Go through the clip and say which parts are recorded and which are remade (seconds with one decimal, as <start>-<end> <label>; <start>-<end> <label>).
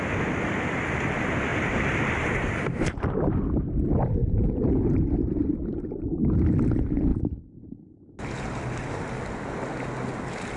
0.0-1.5 recorded; 1.5-3.0 remade; 3.0-4.2 recorded; 4.2-5.0 remade; 5.0-10.6 recorded